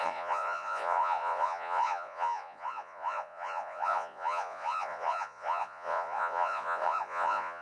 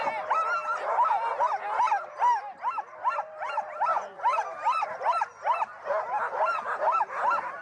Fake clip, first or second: first